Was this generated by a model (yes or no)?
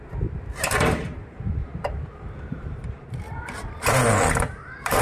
yes